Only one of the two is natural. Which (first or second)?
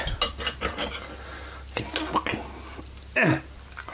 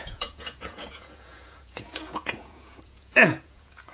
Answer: first